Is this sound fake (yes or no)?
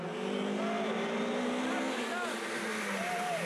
no